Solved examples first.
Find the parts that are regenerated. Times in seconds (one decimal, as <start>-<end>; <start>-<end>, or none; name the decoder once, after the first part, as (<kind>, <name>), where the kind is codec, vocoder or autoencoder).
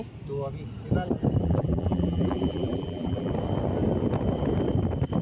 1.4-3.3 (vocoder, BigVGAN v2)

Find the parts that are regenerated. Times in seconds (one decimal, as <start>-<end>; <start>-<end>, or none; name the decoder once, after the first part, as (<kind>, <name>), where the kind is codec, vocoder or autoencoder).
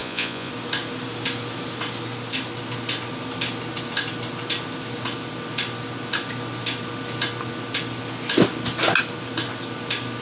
0.0-0.5 (vocoder, Vocos)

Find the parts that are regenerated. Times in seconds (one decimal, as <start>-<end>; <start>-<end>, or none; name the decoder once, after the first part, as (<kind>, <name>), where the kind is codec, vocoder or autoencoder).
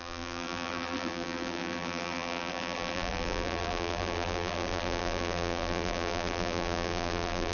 0.0-7.5 (vocoder, BigVGAN v2)